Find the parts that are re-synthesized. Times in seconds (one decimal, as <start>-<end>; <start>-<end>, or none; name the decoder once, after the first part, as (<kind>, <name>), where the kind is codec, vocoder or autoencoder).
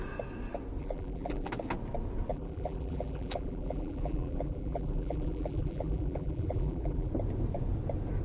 0.8-1.5 (vocoder, BigVGAN v2); 2.3-7.1